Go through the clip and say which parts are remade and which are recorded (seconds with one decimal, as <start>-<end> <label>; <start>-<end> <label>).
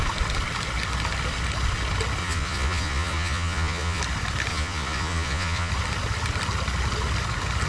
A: 0.0-2.2 recorded; 2.2-4.0 remade; 4.0-4.5 recorded; 4.5-5.7 remade; 5.7-7.7 recorded